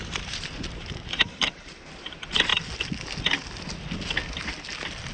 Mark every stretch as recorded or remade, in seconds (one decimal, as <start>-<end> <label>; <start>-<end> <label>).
0.0-2.5 remade; 2.5-5.1 recorded